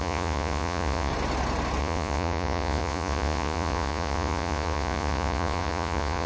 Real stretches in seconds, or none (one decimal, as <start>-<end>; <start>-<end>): 1.1-1.8

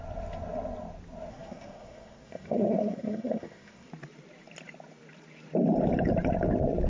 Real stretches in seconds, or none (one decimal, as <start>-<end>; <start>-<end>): 0.0-1.3; 3.9-6.9

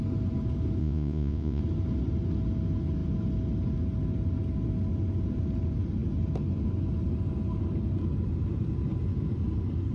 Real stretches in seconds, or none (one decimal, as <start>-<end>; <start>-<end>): 0.0-0.8; 1.6-9.9

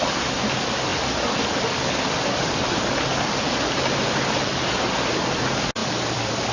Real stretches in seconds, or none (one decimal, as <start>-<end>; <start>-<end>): 0.0-5.8

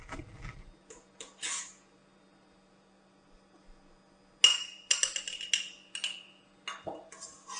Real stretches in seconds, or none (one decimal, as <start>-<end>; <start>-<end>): 0.0-7.6

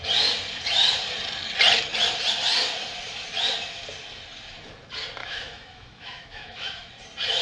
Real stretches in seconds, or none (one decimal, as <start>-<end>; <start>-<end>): 0.0-5.2; 6.9-7.4

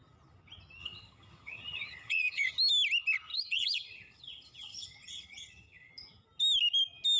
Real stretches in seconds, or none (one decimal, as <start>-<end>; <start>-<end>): 0.0-0.8; 2.5-3.3; 5.9-7.2

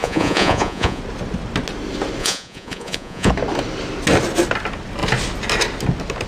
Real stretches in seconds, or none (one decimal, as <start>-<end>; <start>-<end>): 1.0-2.2; 3.3-6.3